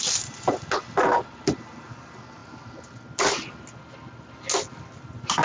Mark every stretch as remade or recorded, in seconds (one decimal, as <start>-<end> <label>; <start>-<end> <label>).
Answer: 0.0-5.4 recorded